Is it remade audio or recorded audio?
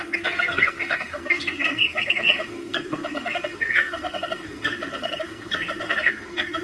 remade